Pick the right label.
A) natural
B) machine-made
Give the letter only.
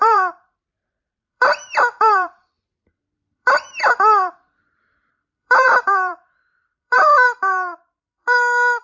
B